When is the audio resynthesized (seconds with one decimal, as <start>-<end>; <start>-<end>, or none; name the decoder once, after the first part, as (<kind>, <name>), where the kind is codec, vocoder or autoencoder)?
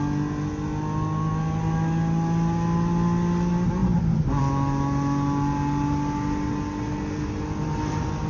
none